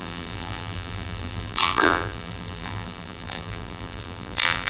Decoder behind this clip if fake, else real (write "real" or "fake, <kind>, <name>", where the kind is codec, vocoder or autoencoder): fake, vocoder, BigVGAN v2